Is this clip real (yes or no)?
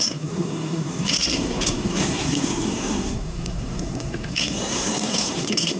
no